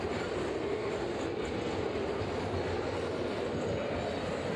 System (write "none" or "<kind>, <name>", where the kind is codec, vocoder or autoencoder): none